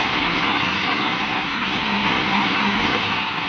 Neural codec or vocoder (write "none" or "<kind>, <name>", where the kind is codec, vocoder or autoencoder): codec, SNAC